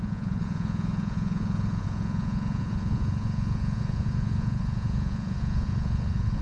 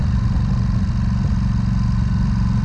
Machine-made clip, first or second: first